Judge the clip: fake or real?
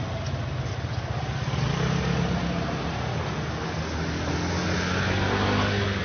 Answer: real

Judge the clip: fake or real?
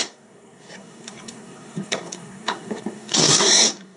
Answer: fake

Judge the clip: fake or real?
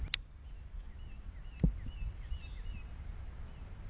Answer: real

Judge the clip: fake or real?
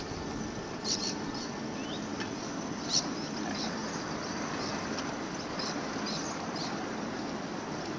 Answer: real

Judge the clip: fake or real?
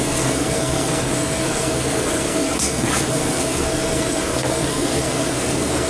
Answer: fake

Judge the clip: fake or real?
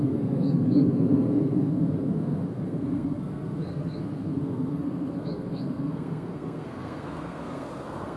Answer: fake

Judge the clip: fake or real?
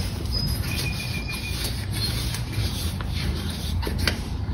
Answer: fake